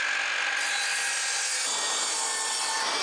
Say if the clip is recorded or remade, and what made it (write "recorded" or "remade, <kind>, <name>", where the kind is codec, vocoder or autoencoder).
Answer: recorded